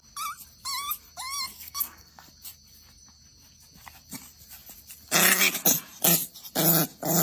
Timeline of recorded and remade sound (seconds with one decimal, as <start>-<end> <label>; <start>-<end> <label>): 0.0-1.5 recorded; 1.5-2.3 remade; 2.3-7.2 recorded